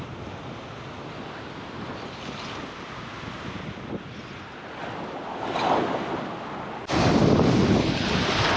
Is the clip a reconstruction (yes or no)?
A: no